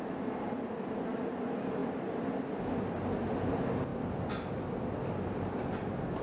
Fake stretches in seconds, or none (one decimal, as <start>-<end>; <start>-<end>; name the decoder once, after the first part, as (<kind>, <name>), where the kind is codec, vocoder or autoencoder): none